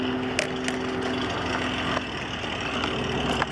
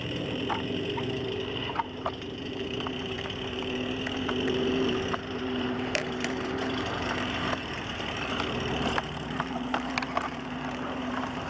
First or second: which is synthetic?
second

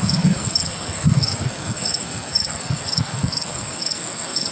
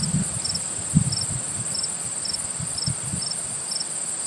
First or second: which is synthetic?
first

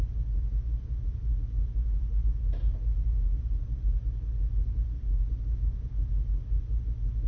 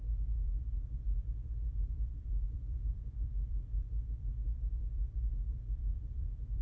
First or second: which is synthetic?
second